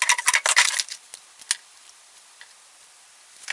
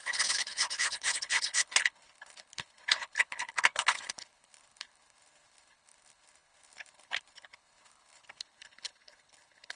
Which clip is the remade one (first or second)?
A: second